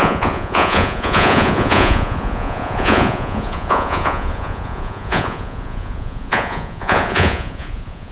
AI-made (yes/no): yes